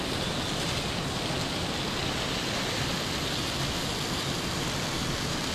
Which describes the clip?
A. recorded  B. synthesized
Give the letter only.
A